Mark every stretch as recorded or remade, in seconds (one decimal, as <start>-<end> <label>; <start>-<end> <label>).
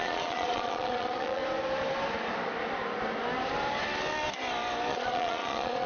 0.0-1.4 remade; 1.4-4.9 recorded; 4.9-5.9 remade